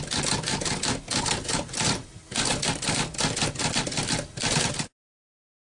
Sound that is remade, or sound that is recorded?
recorded